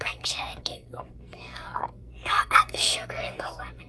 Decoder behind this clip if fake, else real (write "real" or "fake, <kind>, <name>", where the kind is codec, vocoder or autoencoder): fake, codec, SNAC